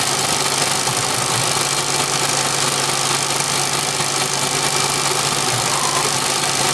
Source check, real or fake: real